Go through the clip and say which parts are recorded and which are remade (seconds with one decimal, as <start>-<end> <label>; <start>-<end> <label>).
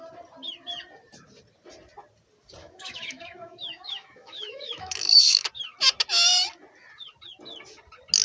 0.0-2.6 recorded; 2.6-5.5 remade; 5.5-8.2 recorded